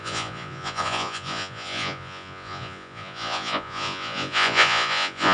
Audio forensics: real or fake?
fake